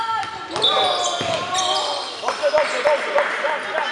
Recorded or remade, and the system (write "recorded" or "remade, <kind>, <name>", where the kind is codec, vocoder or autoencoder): recorded